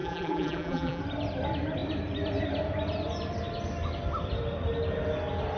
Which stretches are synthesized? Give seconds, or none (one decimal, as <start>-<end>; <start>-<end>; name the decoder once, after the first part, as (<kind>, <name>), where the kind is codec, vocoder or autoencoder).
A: 0.0-1.0 (vocoder, BigVGAN v2)